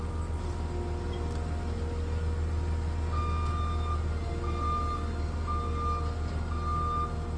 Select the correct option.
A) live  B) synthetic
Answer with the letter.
A